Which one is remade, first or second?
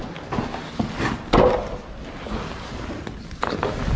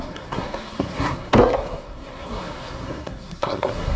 second